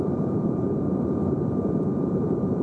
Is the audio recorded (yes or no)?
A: no